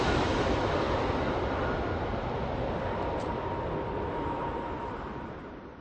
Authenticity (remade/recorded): recorded